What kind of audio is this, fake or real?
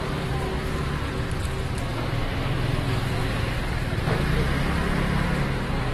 real